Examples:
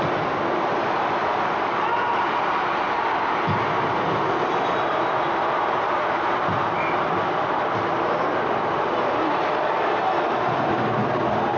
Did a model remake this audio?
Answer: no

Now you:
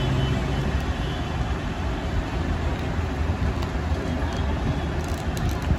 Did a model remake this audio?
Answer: no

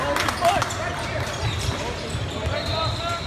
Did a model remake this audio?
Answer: no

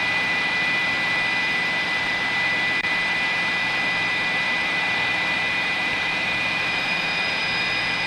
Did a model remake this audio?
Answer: yes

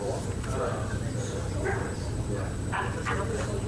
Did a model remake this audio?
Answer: yes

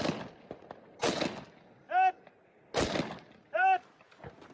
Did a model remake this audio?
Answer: no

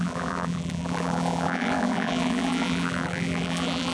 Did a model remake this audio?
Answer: yes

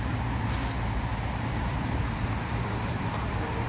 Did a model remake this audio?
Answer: yes